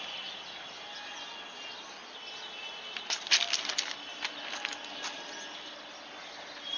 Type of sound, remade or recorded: recorded